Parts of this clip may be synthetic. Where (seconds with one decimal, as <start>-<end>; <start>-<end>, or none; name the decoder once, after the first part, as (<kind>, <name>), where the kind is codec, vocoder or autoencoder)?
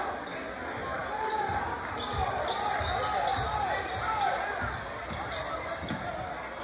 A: none